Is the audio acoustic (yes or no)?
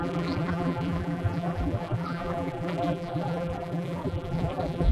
no